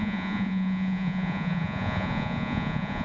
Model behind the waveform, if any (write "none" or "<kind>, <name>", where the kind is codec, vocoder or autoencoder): vocoder, Vocos